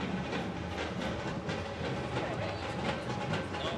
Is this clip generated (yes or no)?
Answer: no